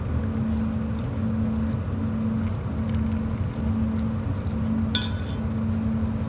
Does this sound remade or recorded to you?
recorded